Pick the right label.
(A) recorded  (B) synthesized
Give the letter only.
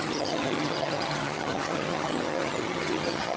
B